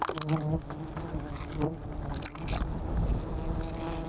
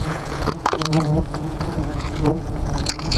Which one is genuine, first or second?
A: first